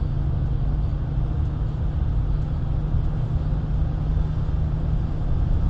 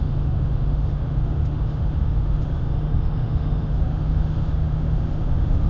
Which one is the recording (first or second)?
first